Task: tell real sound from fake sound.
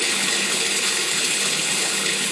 fake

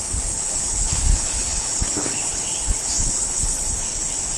fake